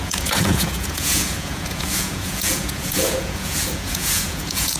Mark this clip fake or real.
fake